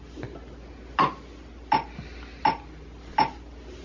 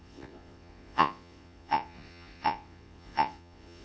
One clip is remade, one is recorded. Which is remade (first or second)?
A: second